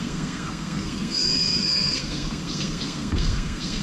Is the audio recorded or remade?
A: remade